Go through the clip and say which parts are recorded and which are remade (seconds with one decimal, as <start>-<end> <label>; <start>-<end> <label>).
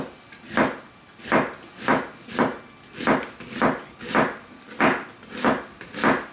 0.0-6.3 recorded